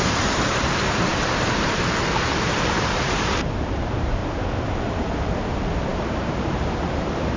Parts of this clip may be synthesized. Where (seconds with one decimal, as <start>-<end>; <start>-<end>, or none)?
0.0-4.2; 4.7-7.4

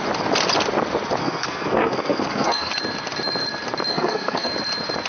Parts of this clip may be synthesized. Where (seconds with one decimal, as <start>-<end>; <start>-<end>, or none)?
1.2-2.7; 3.9-4.5

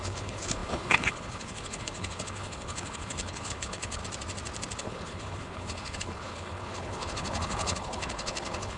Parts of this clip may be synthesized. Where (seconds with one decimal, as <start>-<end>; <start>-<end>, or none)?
0.0-4.0; 4.8-8.8

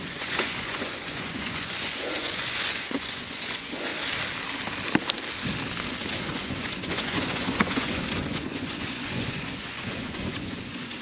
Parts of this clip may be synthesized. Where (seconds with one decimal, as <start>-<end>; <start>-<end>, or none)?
0.0-3.9; 6.2-11.0

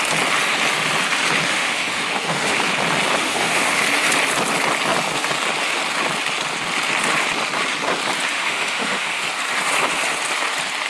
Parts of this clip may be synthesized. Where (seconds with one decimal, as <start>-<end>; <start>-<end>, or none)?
1.5-2.6; 3.2-3.8; 8.3-9.2

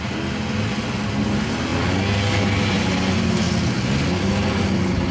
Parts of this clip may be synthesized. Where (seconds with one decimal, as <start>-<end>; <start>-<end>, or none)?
none